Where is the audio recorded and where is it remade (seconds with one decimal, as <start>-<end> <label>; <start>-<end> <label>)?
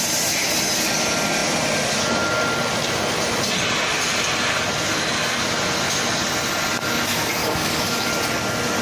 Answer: 0.0-7.4 recorded; 7.4-8.1 remade; 8.1-8.8 recorded